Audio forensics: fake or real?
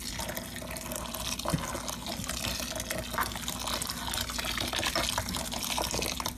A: real